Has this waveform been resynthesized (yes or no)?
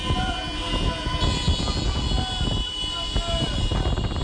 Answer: no